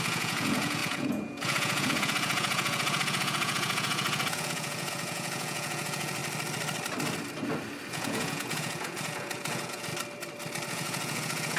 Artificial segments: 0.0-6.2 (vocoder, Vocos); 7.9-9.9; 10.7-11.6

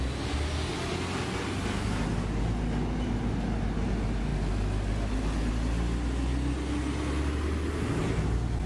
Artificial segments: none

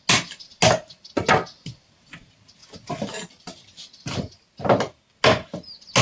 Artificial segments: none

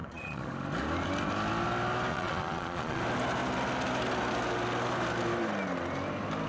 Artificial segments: 0.0-0.5 (vocoder, Vocos); 2.1-3.0